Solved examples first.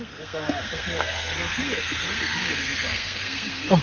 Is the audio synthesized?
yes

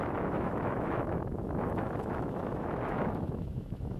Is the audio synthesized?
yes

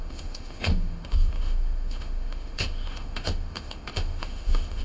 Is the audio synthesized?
yes